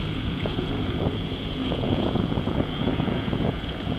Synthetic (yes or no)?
yes